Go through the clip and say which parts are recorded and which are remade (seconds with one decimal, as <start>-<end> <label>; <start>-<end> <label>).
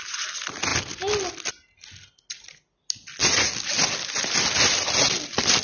0.0-5.6 recorded